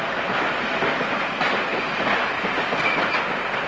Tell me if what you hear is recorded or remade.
recorded